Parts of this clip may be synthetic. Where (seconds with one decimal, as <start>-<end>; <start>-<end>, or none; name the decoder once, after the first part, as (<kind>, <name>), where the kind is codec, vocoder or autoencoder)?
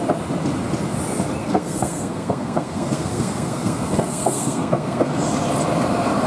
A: 1.4-5.2 (codec, SNAC)